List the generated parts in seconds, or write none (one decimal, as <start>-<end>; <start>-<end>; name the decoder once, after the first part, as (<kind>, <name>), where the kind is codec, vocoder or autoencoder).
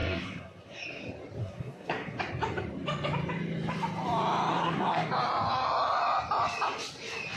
0.0-1.0 (codec, SNAC); 1.4-2.2; 4.5-5.1